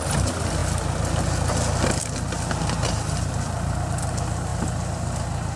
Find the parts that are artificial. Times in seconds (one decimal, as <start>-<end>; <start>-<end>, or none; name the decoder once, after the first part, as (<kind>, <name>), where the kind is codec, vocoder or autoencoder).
none